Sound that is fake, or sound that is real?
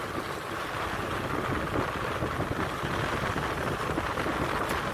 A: real